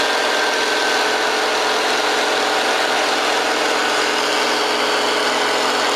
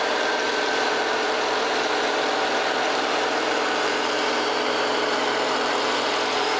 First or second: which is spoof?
second